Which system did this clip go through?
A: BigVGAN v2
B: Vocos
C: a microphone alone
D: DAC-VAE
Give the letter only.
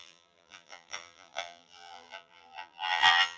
A